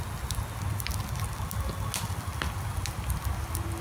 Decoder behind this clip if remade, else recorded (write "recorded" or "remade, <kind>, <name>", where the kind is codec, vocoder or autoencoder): recorded